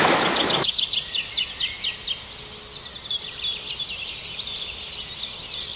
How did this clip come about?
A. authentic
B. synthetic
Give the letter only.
A